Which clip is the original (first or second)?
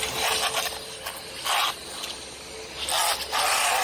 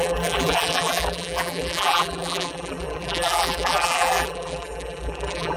first